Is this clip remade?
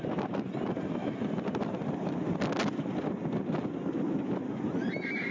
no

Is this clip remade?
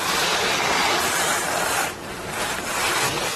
yes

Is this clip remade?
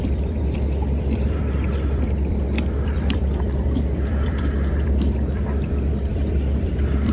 yes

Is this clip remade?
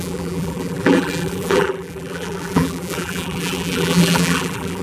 yes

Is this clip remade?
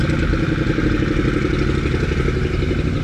no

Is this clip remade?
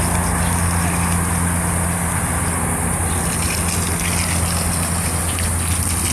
no